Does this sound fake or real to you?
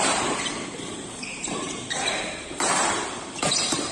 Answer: fake